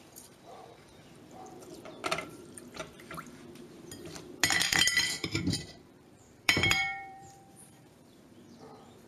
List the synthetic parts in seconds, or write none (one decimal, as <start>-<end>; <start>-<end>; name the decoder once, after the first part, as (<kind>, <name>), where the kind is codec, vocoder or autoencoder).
0.0-1.7 (vocoder, BigVGAN v2); 5.0-9.1